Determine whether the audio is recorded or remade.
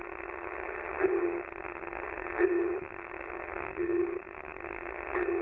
remade